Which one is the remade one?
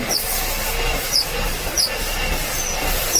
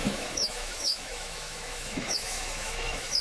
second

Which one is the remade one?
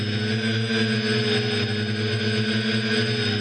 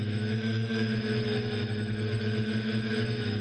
second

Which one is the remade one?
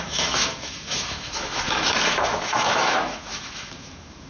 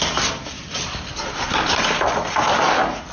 first